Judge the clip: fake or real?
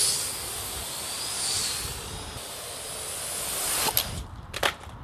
real